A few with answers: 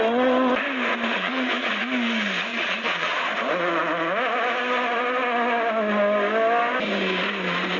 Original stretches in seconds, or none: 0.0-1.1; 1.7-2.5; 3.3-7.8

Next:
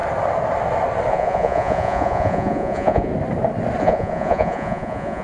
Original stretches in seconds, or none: 0.0-1.1; 3.1-3.8

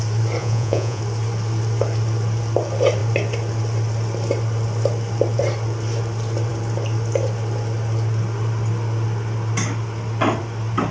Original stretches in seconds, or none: 0.0-0.4; 1.0-10.9

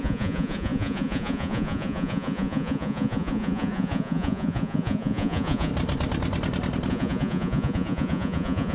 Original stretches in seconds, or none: 5.7-6.9